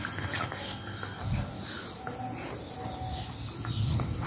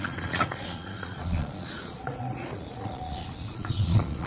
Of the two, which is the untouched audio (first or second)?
first